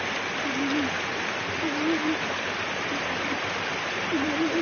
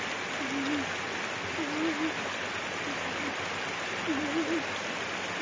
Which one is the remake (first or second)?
first